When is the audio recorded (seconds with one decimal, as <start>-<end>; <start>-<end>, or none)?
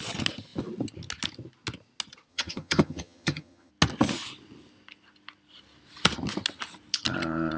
0.0-2.3; 3.7-7.6